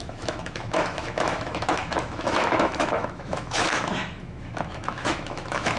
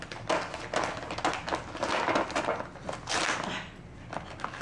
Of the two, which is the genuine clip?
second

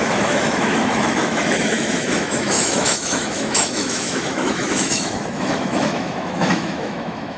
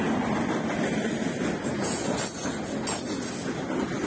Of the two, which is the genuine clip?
second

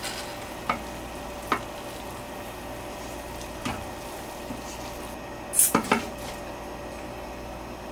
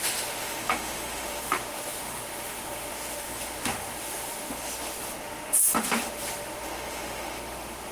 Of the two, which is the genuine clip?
first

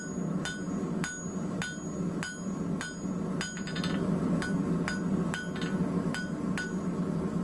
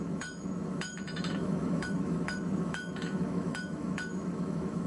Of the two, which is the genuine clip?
first